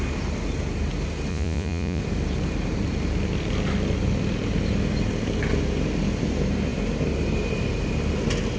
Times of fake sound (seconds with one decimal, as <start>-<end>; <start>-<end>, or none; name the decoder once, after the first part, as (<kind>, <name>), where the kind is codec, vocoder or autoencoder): 1.3-2.0 (vocoder, Vocos)